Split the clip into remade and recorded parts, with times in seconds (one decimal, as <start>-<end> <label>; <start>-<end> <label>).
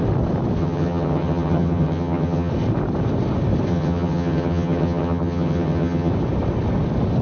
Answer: 0.0-0.6 recorded; 0.6-2.5 remade; 2.5-3.7 recorded; 3.7-6.1 remade; 6.1-7.2 recorded